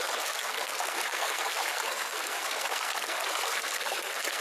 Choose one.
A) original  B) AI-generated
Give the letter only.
B